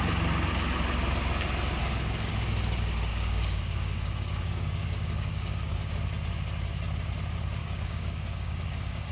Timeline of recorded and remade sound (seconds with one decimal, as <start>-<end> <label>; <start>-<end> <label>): 0.0-1.8 recorded; 1.8-2.3 remade; 2.3-3.1 recorded; 3.1-5.9 remade; 5.9-7.6 recorded; 7.6-9.1 remade